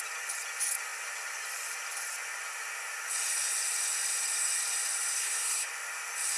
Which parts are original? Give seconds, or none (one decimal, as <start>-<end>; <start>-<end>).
0.0-5.2; 5.7-6.4